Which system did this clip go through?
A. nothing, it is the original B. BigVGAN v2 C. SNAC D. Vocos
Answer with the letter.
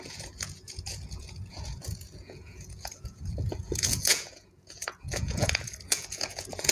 D